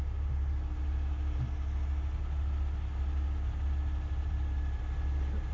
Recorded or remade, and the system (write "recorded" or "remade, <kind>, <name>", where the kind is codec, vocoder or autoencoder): recorded